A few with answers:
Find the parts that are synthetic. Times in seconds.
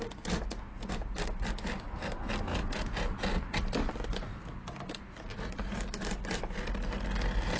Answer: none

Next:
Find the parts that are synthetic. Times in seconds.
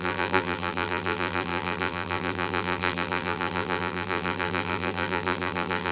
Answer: 0.0-5.9 (vocoder, BigVGAN v2)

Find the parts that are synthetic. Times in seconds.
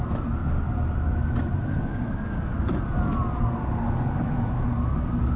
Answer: 2.5-3.2 (vocoder, BigVGAN v2)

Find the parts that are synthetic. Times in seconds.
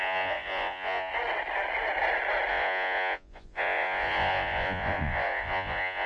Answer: 0.0-1.1 (vocoder, Vocos); 2.5-6.1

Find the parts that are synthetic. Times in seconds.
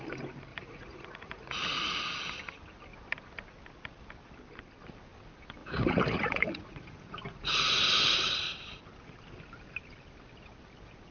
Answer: 0.5-2.0 (vocoder, Vocos); 5.6-7.7